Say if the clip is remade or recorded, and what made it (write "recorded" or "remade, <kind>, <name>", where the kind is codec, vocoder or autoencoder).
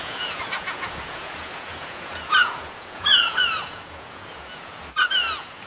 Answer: remade, vocoder, Vocos